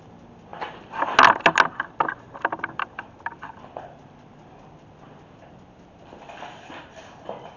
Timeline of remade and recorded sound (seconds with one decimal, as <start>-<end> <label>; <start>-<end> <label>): 0.0-7.6 recorded